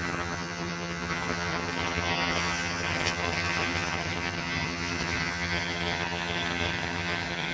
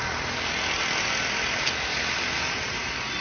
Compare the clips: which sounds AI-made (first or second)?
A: first